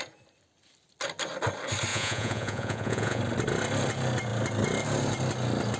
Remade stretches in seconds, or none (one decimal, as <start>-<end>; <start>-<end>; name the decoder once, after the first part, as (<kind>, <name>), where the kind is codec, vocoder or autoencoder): 1.9-3.2 (vocoder, Vocos)